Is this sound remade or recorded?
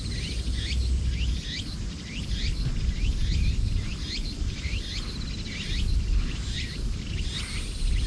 recorded